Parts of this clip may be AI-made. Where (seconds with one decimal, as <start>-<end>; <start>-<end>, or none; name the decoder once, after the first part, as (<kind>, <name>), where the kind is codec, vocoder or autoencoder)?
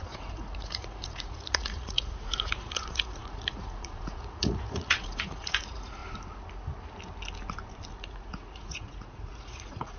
0.0-6.0 (vocoder, Vocos); 7.9-10.0